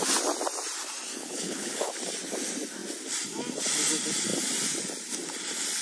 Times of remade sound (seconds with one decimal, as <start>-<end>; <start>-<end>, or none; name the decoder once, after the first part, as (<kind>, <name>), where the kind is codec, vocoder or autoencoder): 1.2-1.9 (codec, HILCodec)